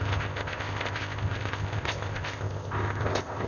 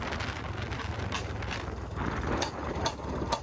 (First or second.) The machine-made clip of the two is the first